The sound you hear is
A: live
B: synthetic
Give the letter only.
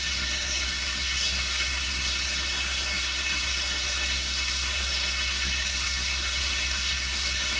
B